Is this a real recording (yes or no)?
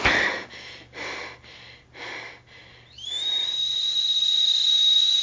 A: yes